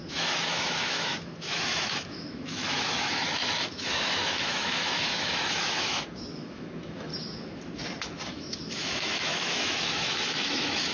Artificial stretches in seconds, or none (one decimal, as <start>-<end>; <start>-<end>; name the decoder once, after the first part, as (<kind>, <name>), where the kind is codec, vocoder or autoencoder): 0.0-7.1 (autoencoder, DAC-VAE); 8.3-10.9